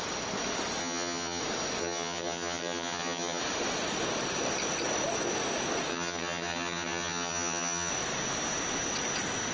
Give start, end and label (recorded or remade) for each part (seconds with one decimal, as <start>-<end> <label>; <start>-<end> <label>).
0.0-0.8 recorded; 0.8-1.4 remade; 1.4-1.8 recorded; 1.8-3.4 remade; 3.4-5.9 recorded; 5.9-7.9 remade; 7.9-9.5 recorded